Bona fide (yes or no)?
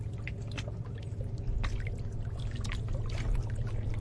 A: yes